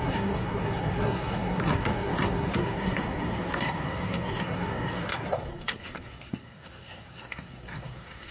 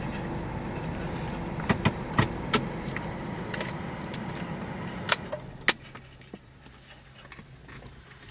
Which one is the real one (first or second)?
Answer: second